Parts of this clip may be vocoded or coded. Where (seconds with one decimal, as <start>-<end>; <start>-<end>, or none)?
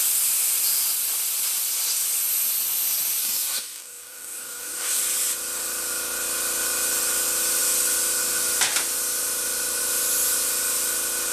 3.2-5.0